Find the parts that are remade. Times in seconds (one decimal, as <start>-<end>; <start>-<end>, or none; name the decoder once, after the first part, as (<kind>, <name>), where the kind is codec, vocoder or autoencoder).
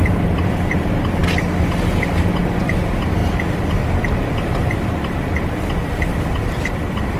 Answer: none